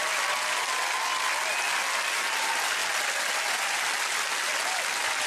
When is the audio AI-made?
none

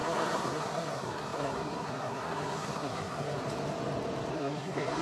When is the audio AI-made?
0.0-3.4 (codec, SNAC); 4.3-5.0

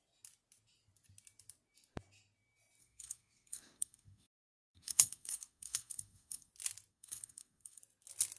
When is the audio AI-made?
2.8-6.5 (codec, SNAC); 6.9-7.8

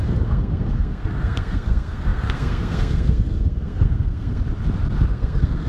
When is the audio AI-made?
0.0-4.4 (codec, SNAC); 5.1-5.7

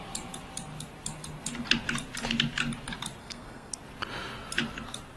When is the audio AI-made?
3.2-3.7 (codec, SNAC)